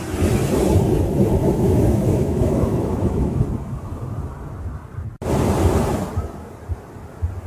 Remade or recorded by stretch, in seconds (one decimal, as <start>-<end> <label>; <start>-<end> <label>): 0.0-1.4 recorded; 1.4-3.4 remade; 3.4-7.5 recorded